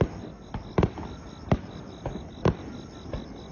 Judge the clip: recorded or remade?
recorded